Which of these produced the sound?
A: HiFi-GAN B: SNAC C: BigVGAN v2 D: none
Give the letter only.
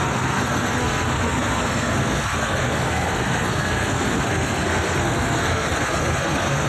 B